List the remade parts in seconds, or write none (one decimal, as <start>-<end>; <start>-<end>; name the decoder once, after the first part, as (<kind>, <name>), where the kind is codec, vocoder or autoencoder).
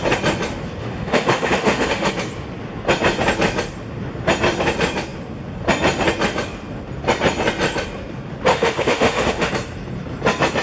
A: 0.8-2.1 (autoencoder, DAC-VAE); 8.5-9.5